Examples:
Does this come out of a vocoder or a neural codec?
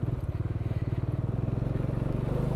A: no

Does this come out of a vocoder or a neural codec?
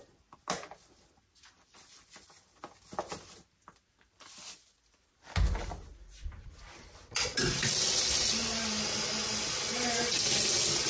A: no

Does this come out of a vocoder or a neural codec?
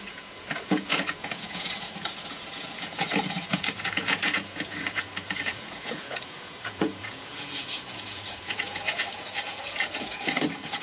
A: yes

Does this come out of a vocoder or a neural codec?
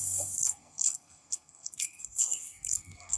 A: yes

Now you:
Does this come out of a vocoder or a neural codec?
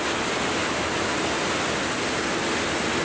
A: no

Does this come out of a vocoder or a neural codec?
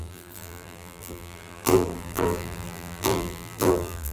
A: yes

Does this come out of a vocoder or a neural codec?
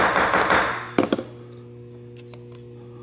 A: no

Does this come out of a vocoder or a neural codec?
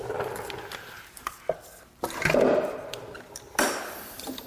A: no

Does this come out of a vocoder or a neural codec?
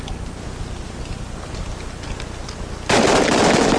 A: no